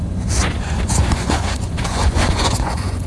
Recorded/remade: remade